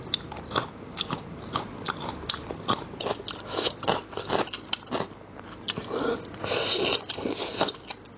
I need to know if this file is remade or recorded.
recorded